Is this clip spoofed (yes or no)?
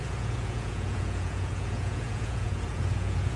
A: yes